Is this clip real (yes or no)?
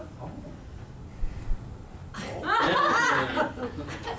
yes